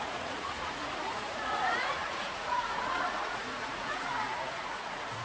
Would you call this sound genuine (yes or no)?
no